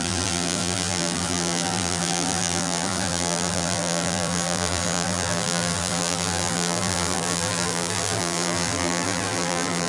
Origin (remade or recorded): remade